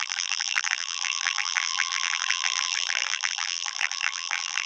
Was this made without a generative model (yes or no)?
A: no